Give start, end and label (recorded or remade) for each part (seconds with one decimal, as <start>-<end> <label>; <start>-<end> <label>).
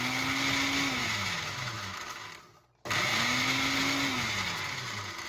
0.0-1.0 recorded; 1.0-2.3 remade; 2.3-5.3 recorded